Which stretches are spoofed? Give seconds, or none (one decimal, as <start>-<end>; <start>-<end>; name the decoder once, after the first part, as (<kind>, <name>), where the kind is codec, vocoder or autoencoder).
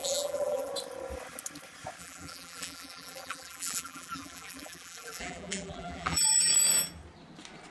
0.0-0.7 (vocoder, BigVGAN v2); 2.0-6.5